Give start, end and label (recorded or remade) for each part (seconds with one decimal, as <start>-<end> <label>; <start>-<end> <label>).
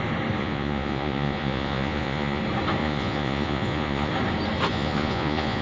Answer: 0.0-0.4 recorded; 0.4-2.4 remade; 2.4-2.8 recorded; 2.8-4.1 remade; 4.1-4.7 recorded; 4.7-5.6 remade